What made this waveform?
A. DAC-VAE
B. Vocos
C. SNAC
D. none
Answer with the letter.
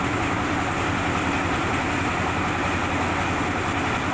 D